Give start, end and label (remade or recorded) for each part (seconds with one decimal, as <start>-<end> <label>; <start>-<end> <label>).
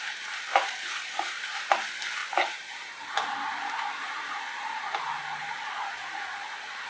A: 0.0-0.5 recorded; 0.5-1.7 remade; 1.7-2.2 recorded; 2.2-5.7 remade; 5.7-6.9 recorded